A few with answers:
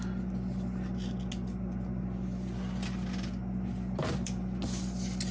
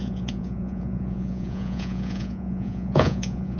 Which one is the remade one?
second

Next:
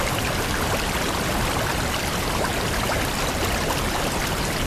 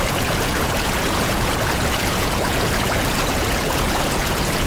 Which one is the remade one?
second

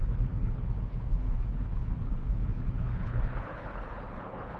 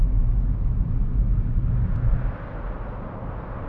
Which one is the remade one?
first